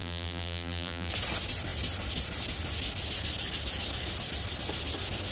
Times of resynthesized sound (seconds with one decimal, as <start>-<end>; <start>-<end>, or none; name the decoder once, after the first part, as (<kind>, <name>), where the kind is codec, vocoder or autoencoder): 0.0-1.1 (vocoder, BigVGAN v2)